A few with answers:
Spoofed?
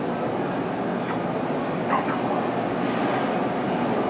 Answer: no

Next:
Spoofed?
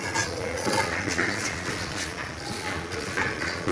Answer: yes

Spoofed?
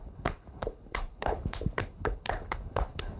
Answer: yes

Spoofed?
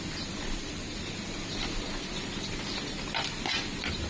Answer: yes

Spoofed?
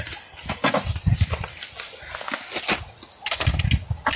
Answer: no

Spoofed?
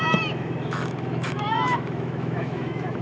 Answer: yes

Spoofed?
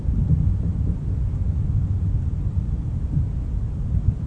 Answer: no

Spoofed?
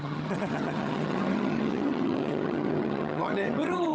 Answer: yes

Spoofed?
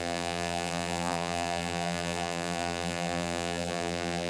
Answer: yes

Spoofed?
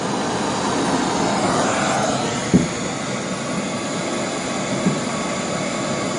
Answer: no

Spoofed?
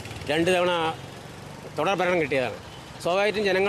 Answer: no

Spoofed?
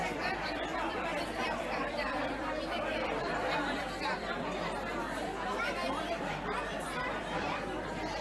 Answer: yes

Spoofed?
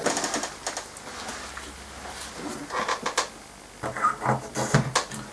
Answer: no